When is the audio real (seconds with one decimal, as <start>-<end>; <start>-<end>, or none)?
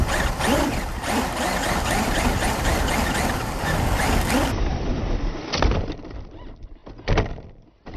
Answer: 6.8-8.0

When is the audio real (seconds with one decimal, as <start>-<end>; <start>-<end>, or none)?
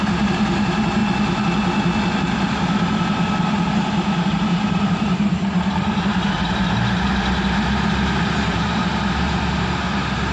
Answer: 1.0-4.3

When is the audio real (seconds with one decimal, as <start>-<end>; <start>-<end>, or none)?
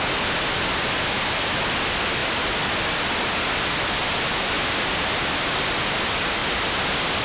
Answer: 0.0-7.2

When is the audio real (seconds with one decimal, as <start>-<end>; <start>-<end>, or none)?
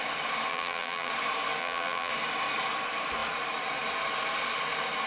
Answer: 0.0-0.5; 1.1-1.6; 2.1-5.1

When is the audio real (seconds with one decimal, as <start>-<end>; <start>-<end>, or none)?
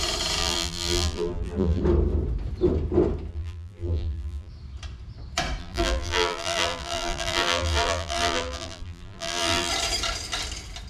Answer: 0.0-0.4; 1.8-3.3; 4.5-5.6; 9.7-10.9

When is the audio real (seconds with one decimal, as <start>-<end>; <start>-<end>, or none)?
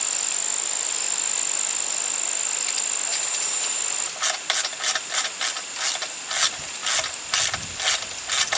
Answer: 0.0-3.1; 3.8-8.6